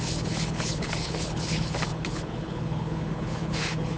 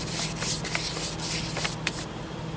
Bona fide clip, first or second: second